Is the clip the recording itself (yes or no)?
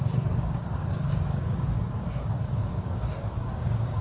no